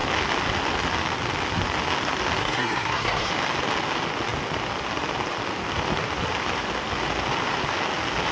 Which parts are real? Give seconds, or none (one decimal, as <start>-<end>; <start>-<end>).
0.0-2.4; 3.3-8.3